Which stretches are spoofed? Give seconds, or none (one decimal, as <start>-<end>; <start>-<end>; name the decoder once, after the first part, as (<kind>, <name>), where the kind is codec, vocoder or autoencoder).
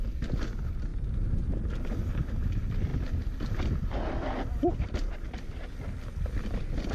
none